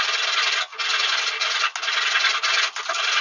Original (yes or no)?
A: yes